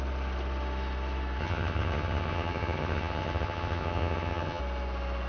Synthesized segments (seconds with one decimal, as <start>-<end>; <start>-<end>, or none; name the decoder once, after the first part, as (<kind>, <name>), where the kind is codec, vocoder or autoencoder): 1.4-4.6 (vocoder, HiFi-GAN)